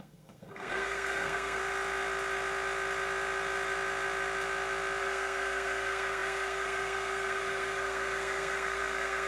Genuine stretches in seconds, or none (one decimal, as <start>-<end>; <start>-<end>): 1.6-5.0